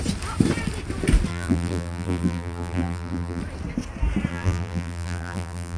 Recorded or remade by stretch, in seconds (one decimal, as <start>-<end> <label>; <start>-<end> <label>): 0.0-1.3 recorded; 1.3-3.4 remade; 3.4-4.3 recorded; 4.3-5.8 remade